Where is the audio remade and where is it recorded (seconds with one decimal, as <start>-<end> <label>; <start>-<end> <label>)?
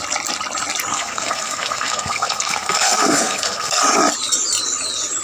0.0-0.9 recorded; 0.9-3.8 remade; 3.8-5.2 recorded